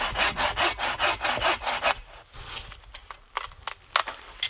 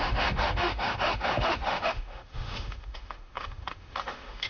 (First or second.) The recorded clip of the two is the first